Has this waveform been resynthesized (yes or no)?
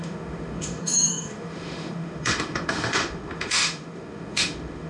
yes